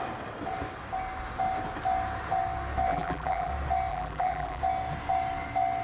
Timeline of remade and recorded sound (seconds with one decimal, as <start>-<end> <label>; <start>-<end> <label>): 0.0-2.9 recorded; 2.9-3.5 remade; 3.5-3.9 recorded; 3.9-4.6 remade; 4.6-5.8 recorded